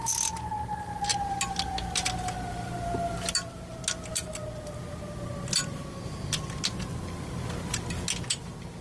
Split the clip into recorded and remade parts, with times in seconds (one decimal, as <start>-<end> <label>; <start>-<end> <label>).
0.0-8.8 recorded